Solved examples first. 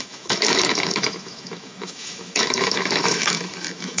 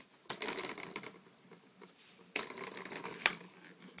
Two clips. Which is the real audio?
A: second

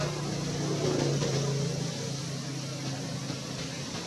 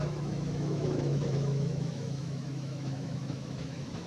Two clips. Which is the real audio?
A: first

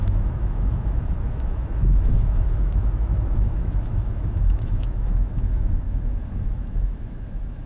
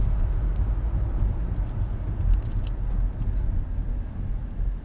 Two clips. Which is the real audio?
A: second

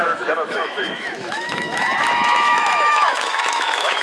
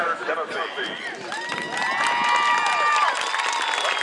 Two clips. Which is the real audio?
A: second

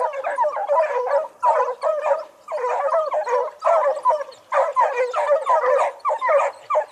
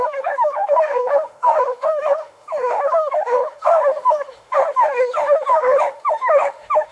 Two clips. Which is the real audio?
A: first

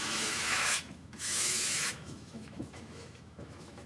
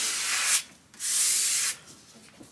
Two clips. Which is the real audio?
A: second